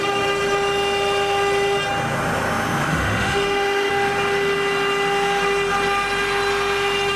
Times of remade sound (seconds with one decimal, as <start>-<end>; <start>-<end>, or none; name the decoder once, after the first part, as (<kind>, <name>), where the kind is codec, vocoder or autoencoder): 2.9-3.9 (autoencoder, DAC-VAE)